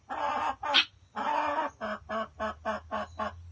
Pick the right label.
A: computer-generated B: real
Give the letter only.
B